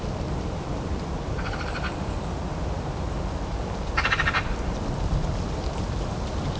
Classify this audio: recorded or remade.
remade